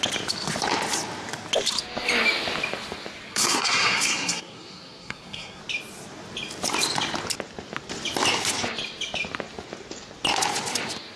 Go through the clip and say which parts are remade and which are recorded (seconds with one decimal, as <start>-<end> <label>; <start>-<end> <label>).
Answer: 0.0-3.3 recorded; 3.3-5.6 remade; 5.6-11.2 recorded